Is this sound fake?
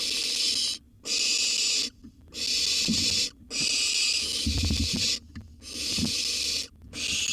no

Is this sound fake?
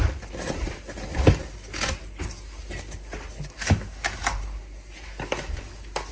no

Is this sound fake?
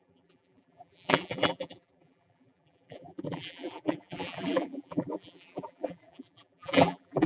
yes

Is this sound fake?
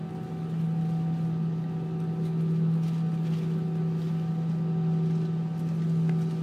no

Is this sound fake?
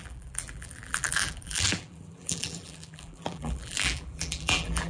yes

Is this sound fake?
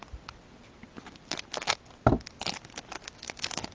no